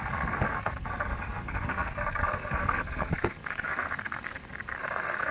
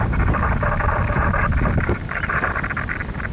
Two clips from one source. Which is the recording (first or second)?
second